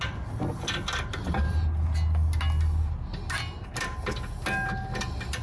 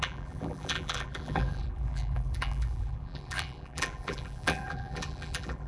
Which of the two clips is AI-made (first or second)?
second